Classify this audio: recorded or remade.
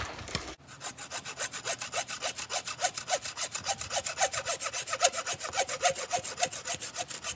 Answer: recorded